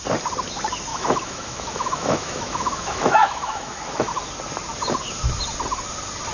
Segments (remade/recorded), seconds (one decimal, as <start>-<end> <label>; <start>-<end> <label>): 0.0-0.9 recorded; 0.9-4.1 remade; 4.1-6.3 recorded